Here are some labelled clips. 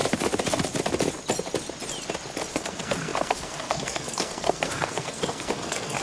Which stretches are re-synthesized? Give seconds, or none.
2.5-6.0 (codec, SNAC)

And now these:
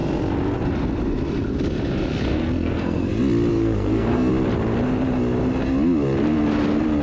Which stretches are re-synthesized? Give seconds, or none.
2.3-3.1 (codec, SNAC); 3.5-4.3